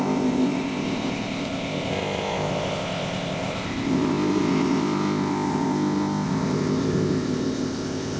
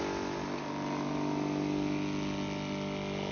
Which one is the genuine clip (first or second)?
second